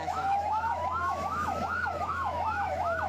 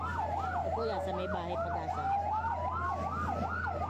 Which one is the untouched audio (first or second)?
second